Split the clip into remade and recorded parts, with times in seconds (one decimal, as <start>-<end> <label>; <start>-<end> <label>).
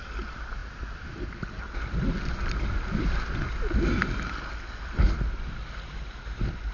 0.0-6.7 recorded